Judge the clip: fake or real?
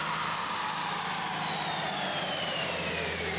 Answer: real